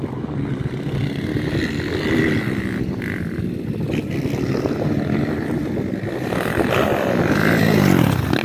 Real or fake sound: real